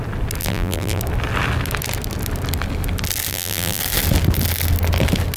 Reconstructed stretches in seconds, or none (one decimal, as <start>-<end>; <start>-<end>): 0.4-1.0; 3.3-3.8